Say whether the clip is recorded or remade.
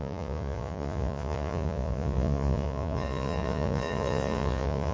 remade